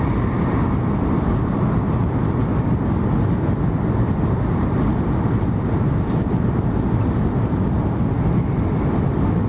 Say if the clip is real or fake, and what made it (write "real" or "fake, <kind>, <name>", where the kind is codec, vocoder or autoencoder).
real